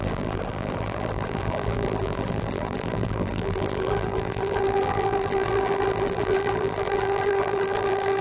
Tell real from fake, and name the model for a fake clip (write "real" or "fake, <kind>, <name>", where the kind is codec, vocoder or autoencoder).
fake, vocoder, BigVGAN v2